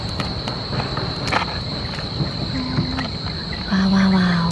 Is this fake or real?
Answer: real